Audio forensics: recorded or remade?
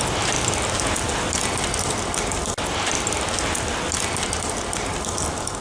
recorded